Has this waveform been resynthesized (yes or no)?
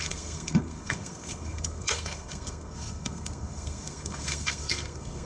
yes